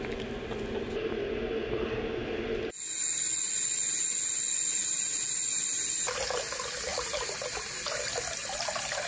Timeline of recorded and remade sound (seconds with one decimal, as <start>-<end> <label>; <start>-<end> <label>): 0.0-9.1 recorded